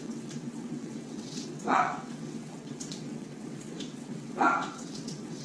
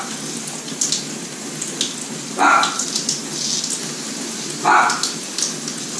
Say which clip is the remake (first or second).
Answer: first